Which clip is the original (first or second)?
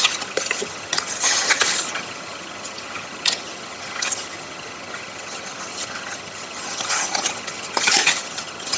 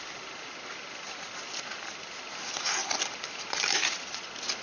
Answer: second